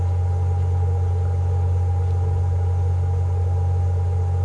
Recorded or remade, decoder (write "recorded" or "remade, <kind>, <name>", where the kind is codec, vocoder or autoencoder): recorded